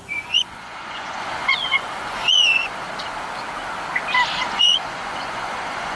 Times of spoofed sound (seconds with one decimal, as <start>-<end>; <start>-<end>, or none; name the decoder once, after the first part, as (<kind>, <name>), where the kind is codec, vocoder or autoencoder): 0.0-2.9 (vocoder, Vocos); 4.5-6.0